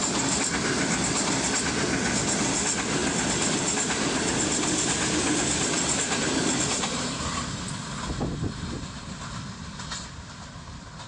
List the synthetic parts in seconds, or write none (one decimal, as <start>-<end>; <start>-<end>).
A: none